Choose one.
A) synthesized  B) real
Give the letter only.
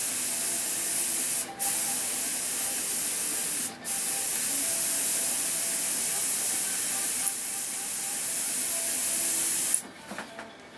B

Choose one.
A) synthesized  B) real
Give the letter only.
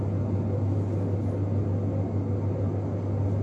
B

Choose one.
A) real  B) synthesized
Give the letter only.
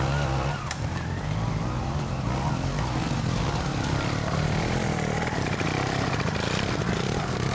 B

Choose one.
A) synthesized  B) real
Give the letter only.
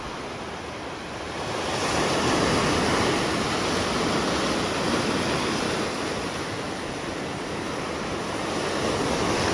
B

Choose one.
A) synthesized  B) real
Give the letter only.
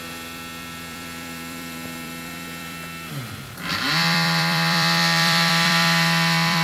A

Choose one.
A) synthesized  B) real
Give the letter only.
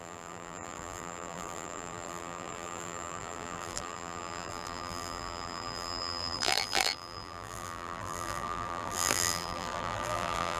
A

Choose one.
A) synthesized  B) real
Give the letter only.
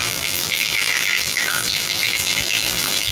A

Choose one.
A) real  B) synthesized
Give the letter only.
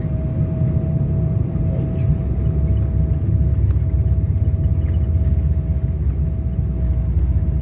A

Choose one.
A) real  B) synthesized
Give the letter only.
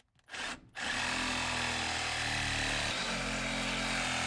A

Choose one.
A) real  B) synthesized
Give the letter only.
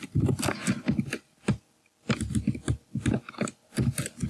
A